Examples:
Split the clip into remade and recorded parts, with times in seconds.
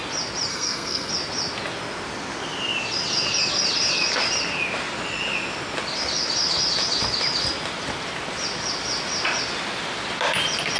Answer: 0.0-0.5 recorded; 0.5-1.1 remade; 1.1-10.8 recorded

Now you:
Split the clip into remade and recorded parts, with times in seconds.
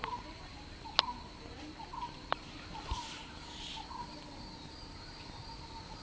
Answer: 0.0-6.0 recorded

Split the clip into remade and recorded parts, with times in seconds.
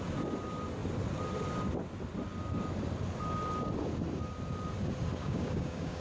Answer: 0.0-5.2 recorded; 5.2-6.0 remade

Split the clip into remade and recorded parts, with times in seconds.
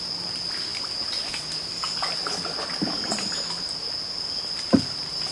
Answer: 0.0-5.3 recorded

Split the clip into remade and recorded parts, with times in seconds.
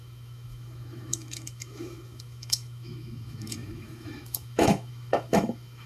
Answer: 0.0-5.9 remade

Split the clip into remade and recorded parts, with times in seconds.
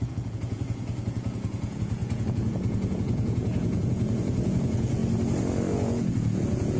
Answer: 0.0-5.0 remade; 5.0-5.7 recorded; 5.7-6.8 remade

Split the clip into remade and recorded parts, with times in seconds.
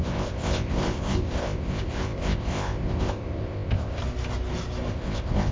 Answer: 0.0-4.0 remade; 4.0-4.9 recorded; 4.9-5.5 remade